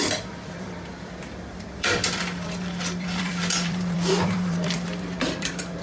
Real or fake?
fake